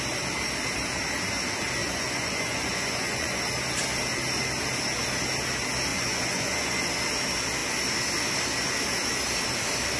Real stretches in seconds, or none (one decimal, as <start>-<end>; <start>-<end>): 0.0-1.8; 3.4-5.9; 6.9-10.0